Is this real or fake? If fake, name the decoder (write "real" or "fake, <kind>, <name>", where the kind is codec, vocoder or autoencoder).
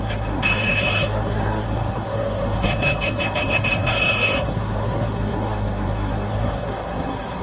fake, codec, SNAC